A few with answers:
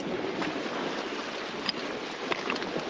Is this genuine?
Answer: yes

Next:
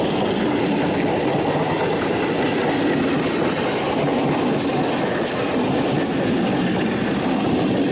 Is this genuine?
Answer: yes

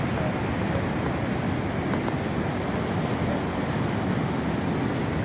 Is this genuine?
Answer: yes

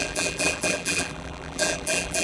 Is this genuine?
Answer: no